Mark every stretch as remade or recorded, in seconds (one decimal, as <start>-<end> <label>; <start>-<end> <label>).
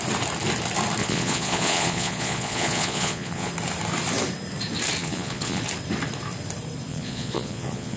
0.0-1.0 recorded; 1.0-3.5 remade; 3.5-5.0 recorded; 5.0-5.6 remade; 5.6-6.9 recorded; 6.9-8.0 remade